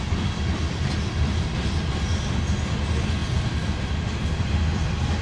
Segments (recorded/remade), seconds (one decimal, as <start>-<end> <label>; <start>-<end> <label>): 0.0-5.2 recorded